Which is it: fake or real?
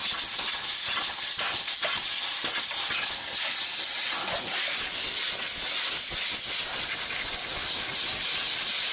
real